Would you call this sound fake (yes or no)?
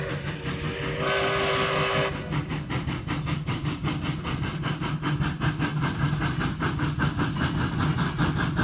no